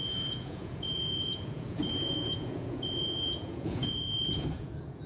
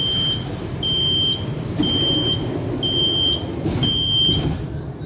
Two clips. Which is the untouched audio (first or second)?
second